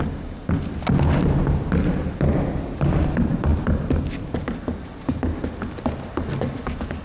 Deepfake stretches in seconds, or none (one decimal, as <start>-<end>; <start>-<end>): none

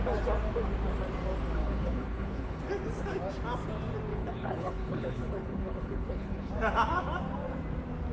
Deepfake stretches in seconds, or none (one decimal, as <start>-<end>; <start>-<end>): 1.6-2.6; 4.1-6.5

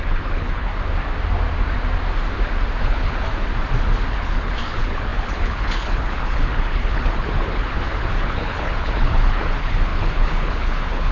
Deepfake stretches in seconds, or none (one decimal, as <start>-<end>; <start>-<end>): 0.0-0.7; 2.8-3.3; 4.1-11.1